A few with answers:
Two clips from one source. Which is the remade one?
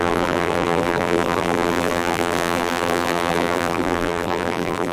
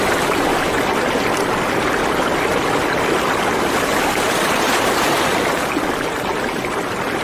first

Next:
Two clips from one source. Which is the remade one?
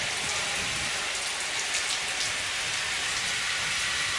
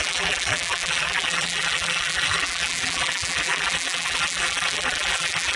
second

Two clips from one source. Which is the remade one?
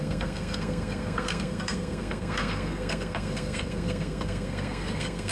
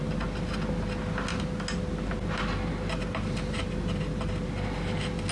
first